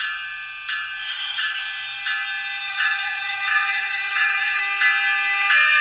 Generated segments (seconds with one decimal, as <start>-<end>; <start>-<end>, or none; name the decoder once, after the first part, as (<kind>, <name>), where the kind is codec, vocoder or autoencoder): 1.1-1.6 (vocoder, HiFi-GAN); 2.7-4.6